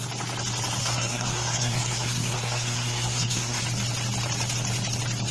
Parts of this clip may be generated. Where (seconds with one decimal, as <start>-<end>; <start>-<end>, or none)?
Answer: 0.8-3.6